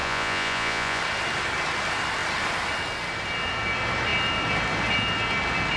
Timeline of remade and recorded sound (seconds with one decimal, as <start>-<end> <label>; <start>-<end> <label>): 0.0-1.0 remade; 1.0-5.8 recorded